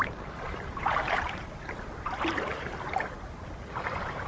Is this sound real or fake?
fake